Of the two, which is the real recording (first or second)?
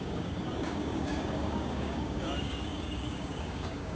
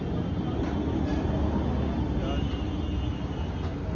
second